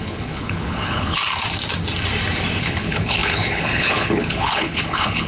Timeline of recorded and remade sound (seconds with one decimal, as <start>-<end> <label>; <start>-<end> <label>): 0.0-1.2 remade; 1.2-2.6 recorded; 2.6-5.3 remade